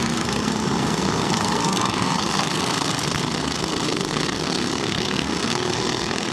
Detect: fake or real fake